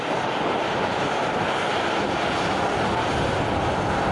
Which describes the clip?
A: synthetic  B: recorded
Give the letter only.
B